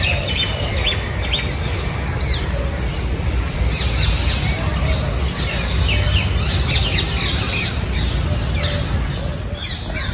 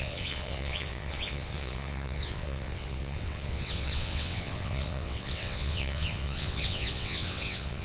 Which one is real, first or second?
first